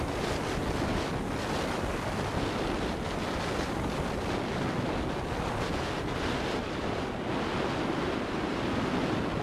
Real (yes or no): yes